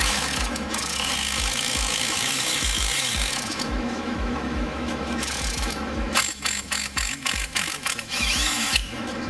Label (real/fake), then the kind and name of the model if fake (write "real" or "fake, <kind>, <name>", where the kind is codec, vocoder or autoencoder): fake, autoencoder, DAC-VAE